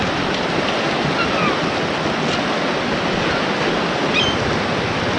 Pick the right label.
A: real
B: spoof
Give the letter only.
A